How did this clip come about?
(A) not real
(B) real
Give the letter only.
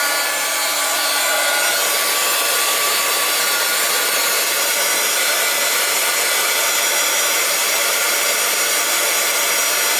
A